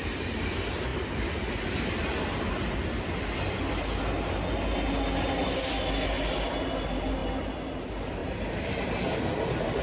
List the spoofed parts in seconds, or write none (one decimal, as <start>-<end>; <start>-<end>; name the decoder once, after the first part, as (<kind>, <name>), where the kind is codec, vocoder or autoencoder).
none